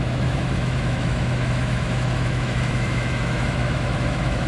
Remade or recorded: remade